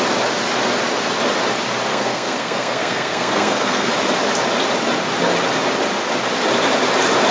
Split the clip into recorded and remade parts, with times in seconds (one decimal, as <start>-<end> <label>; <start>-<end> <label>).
0.0-1.9 recorded; 1.9-3.9 remade; 3.9-7.3 recorded